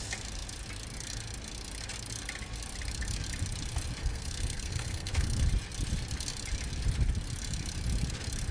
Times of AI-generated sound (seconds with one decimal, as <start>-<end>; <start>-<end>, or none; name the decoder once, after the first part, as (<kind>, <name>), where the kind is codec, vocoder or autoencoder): 4.0-5.4 (codec, SNAC)